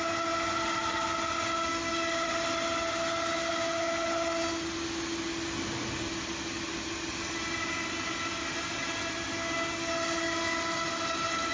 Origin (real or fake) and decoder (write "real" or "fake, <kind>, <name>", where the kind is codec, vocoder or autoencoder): real